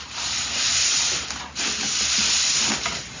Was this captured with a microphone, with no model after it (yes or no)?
yes